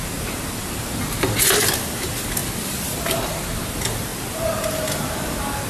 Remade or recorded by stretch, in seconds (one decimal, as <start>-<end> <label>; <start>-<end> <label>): 0.0-5.7 recorded